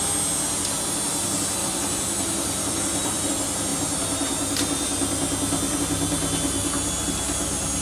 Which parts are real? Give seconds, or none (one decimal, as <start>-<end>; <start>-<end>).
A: 0.0-1.6; 3.3-7.8